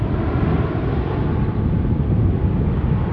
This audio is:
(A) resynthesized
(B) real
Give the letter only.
B